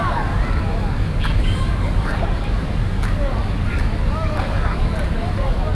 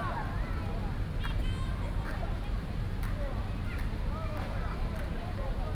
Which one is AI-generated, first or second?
first